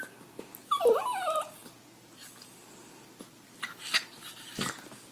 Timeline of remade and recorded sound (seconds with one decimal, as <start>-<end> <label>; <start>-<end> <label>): 0.0-5.1 recorded